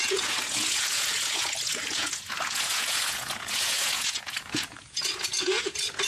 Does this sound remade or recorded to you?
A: remade